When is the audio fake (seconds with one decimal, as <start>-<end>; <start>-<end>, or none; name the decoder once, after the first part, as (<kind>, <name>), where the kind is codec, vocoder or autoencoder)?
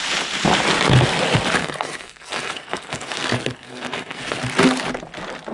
1.6-4.4 (codec, SNAC)